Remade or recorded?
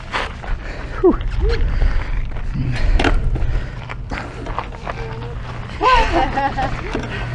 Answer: recorded